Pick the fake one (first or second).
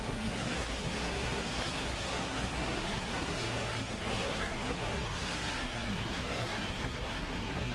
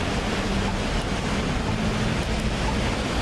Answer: first